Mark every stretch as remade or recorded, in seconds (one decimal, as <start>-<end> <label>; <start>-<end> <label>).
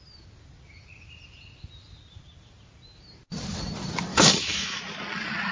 0.0-4.1 recorded; 4.1-4.8 remade; 4.8-5.5 recorded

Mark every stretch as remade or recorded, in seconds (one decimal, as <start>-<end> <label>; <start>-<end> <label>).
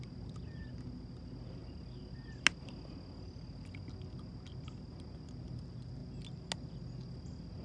0.0-7.6 recorded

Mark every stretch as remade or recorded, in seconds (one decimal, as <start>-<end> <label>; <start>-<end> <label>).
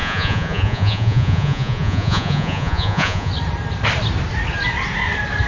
0.0-3.3 remade; 3.3-5.5 recorded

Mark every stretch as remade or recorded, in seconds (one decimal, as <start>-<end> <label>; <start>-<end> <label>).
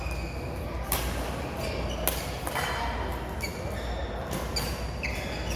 0.0-5.6 recorded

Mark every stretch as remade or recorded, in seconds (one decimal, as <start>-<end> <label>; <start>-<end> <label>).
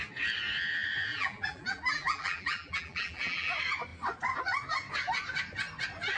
0.0-1.1 recorded; 1.1-3.5 remade; 3.5-6.2 recorded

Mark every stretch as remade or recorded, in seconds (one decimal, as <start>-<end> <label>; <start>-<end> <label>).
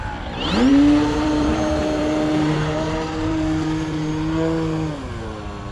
0.0-0.7 recorded; 0.7-4.1 remade; 4.1-5.7 recorded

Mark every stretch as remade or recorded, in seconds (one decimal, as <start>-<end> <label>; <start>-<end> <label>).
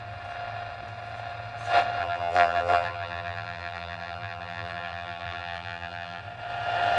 0.0-2.0 recorded; 2.0-6.2 remade; 6.2-7.0 recorded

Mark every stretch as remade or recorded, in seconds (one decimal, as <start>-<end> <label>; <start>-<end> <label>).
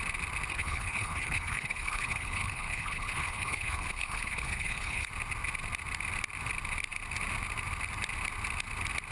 0.0-0.5 recorded; 0.5-5.1 remade; 5.1-9.1 recorded